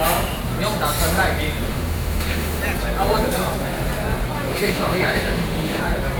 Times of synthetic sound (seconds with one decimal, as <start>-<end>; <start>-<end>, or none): 1.7-2.6; 4.5-5.8